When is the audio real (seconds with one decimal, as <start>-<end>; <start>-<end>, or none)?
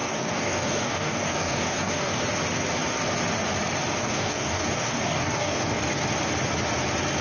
2.2-4.0; 5.8-7.2